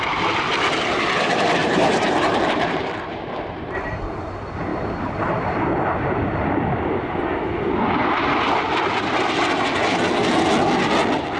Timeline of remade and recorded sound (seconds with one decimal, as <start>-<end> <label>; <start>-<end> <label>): 0.0-1.6 recorded; 1.6-3.9 remade; 3.9-4.7 recorded; 4.7-5.6 remade; 5.6-11.4 recorded